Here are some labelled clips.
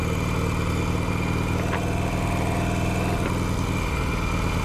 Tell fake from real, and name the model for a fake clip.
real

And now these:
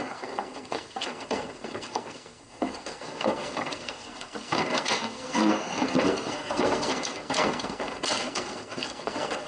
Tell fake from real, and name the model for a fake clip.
fake, codec, SNAC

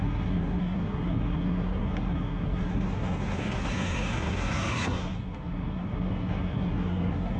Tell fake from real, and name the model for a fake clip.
fake, codec, SNAC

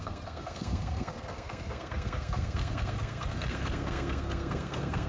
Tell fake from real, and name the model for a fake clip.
fake, codec, SNAC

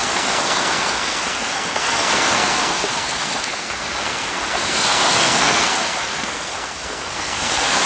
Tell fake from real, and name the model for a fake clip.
fake, codec, SNAC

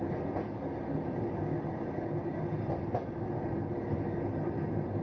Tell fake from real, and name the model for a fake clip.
real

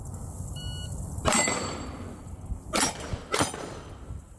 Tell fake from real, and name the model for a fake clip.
real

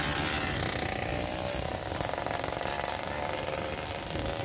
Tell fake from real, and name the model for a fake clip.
real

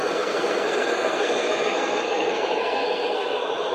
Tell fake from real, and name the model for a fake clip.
fake, codec, SNAC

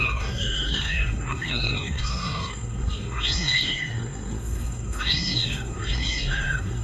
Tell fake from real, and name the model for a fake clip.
fake, codec, SNAC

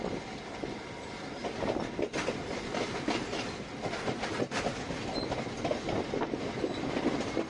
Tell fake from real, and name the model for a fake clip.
real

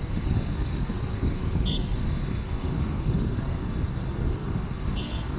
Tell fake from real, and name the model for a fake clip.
fake, codec, SNAC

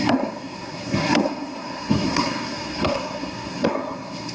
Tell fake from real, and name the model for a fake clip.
fake, codec, SNAC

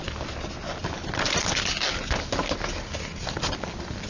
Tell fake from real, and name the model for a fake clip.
real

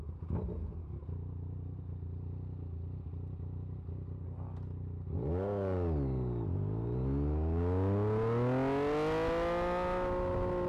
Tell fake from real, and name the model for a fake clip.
real